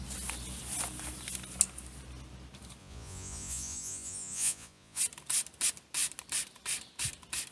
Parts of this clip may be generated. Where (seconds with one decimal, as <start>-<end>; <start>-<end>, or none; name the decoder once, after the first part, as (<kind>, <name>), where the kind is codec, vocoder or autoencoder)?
2.8-5.0 (vocoder, Vocos)

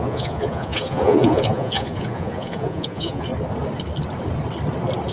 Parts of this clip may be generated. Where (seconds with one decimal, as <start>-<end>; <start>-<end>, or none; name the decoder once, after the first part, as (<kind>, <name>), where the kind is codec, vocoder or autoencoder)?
0.0-3.3 (vocoder, Vocos)

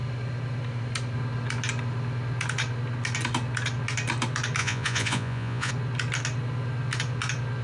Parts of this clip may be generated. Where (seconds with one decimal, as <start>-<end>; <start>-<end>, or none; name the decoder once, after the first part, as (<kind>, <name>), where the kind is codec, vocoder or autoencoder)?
4.6-5.7 (vocoder, Vocos)